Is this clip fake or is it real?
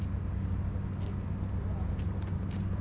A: real